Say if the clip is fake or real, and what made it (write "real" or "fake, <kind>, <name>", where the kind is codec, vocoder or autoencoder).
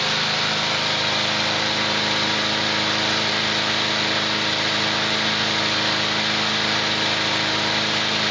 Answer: real